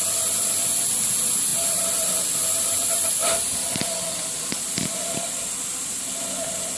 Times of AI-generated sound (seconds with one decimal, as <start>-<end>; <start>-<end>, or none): 0.0-6.8